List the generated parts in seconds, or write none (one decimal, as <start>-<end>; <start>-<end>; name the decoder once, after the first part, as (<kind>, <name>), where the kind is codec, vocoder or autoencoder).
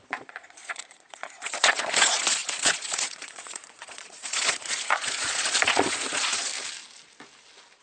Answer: 0.0-6.5 (vocoder, Vocos)